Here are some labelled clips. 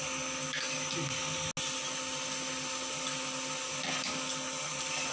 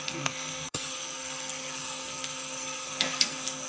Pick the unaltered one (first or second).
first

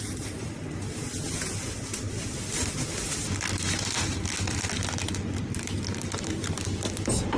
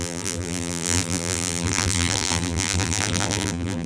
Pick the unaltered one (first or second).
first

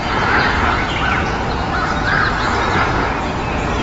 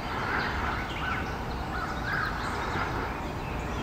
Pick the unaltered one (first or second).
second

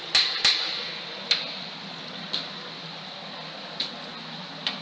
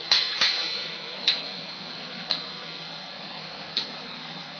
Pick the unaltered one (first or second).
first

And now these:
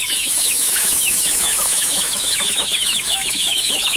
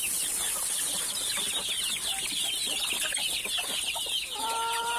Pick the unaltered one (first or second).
second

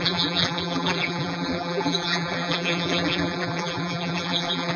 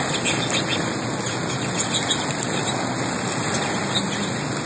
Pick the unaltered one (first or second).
second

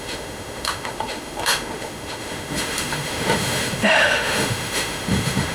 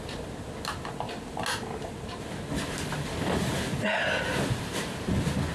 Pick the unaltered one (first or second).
second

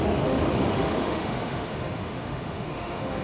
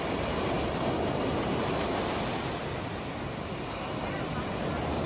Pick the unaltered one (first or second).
second